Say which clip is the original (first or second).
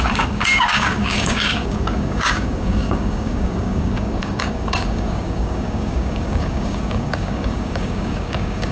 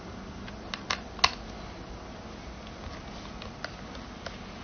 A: second